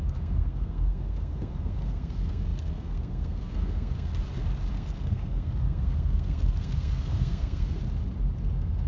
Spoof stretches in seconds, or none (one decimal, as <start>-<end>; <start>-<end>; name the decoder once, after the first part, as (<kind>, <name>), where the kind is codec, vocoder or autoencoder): 0.0-4.1 (codec, SNAC); 4.7-7.8; 8.4-8.9